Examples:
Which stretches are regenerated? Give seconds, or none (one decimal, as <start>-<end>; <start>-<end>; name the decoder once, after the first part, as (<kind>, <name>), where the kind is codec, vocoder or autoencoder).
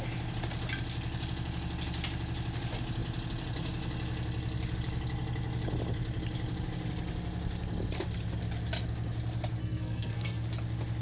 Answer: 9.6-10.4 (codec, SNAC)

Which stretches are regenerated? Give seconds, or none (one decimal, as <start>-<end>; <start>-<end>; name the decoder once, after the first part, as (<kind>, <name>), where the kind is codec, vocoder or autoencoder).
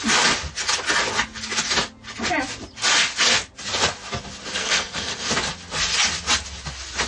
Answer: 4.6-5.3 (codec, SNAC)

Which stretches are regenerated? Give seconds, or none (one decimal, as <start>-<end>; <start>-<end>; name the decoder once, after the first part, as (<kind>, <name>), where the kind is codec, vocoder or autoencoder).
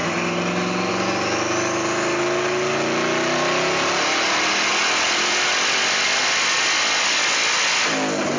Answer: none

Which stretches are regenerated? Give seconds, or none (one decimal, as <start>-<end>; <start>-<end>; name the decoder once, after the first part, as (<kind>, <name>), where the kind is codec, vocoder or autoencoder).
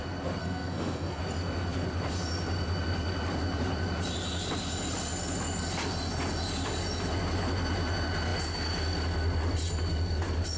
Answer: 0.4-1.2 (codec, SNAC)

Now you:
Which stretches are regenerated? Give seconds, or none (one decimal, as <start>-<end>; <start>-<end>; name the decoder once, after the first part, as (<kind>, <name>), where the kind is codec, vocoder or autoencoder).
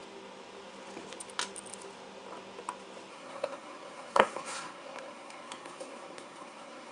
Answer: 3.1-6.9 (codec, SNAC)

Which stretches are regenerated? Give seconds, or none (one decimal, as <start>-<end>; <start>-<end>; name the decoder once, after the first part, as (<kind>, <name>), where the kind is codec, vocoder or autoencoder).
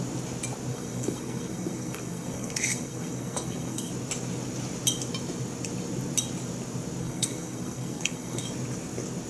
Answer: 0.7-3.9 (codec, SNAC); 7.0-8.4